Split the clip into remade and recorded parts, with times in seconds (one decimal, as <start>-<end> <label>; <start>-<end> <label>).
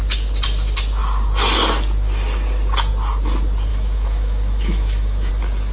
0.0-3.7 recorded; 3.7-5.3 remade; 5.3-5.7 recorded